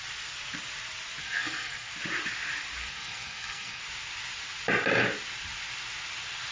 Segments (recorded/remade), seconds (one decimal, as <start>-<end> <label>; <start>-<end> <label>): 0.0-1.2 recorded; 1.2-1.9 remade; 1.9-2.8 recorded; 2.8-3.8 remade; 3.8-6.5 recorded